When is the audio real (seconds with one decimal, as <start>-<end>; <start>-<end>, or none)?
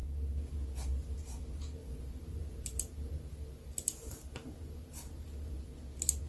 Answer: 0.0-1.8; 5.6-6.3